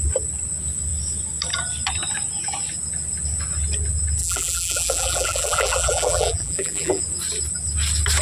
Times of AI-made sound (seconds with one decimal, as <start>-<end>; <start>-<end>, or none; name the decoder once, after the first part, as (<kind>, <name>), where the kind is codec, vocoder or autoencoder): 4.2-7.0 (vocoder, BigVGAN v2)